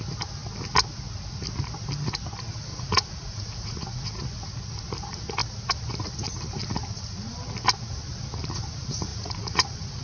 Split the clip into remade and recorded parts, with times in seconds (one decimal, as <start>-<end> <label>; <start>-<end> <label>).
0.0-2.7 recorded; 2.7-4.1 remade; 4.1-9.1 recorded; 9.1-10.0 remade